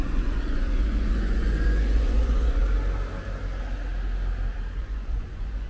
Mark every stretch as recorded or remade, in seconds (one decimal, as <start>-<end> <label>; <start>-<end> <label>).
0.0-2.6 remade; 2.6-4.8 recorded; 4.8-5.7 remade